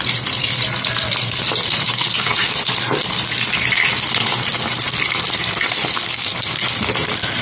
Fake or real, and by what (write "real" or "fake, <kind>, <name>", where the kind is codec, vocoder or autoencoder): real